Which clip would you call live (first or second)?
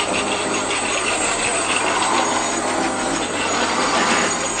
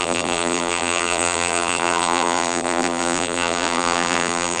first